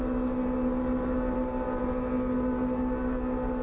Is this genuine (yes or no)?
yes